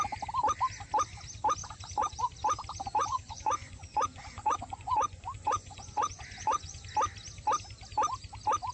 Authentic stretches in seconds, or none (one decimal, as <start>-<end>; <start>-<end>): 0.0-1.6; 2.2-3.0; 6.8-8.7